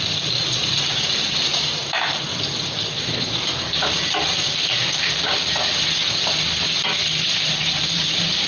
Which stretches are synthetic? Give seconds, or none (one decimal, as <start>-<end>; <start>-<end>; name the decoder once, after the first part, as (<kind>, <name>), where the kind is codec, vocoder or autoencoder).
0.0-2.3 (vocoder, BigVGAN v2); 3.1-5.7; 7.2-8.5